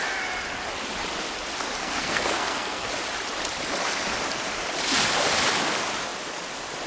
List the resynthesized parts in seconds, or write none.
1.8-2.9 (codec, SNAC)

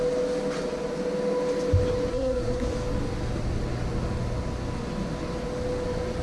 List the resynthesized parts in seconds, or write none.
2.1-2.7 (codec, SNAC)

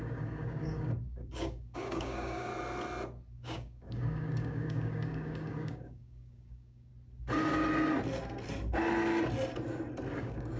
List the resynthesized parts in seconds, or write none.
0.0-2.5 (codec, DAC); 3.3-6.9; 10.2-10.6

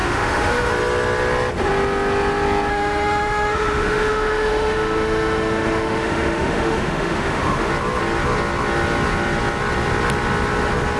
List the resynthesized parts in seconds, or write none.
0.0-0.7 (autoencoder, DAC-VAE); 2.7-7.7

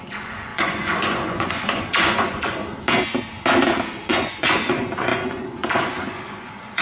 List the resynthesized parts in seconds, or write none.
0.0-2.6 (vocoder, Vocos); 4.1-6.8

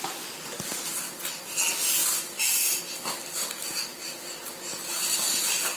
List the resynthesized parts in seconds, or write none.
none